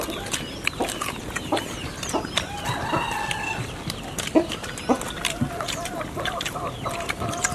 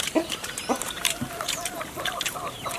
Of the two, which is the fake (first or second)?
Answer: second